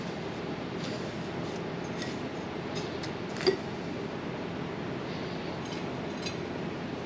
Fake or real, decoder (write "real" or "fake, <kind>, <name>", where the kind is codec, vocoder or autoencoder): real